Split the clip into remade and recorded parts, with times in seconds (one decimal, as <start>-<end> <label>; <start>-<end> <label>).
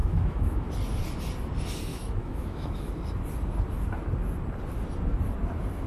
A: 0.0-0.7 remade; 0.7-1.9 recorded; 1.9-2.9 remade; 2.9-5.9 recorded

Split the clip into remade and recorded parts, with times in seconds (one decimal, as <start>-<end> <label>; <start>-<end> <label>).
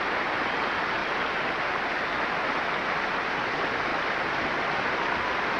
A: 0.0-5.6 recorded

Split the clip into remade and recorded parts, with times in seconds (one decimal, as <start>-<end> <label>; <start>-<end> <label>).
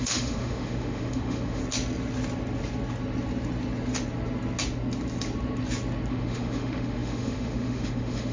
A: 0.0-1.6 remade; 1.6-6.1 recorded; 6.1-8.3 remade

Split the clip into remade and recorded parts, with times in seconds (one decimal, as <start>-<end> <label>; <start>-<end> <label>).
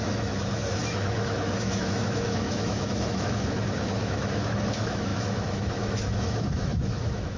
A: 0.0-7.4 remade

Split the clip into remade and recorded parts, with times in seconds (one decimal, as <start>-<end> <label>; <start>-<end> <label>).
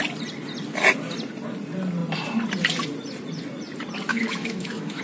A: 0.0-4.1 recorded; 4.1-5.0 remade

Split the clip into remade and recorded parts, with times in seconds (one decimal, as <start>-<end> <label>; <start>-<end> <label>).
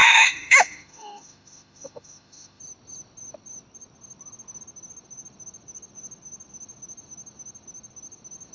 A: 0.0-2.6 remade; 2.6-8.5 recorded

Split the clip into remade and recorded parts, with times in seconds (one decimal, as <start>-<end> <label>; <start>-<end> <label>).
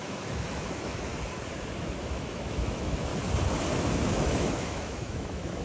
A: 0.0-1.1 remade; 1.1-1.8 recorded; 1.8-3.1 remade; 3.1-4.0 recorded; 4.0-5.6 remade